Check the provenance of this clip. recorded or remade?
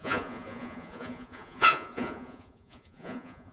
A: remade